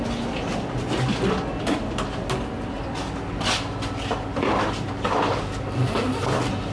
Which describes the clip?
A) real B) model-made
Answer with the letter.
A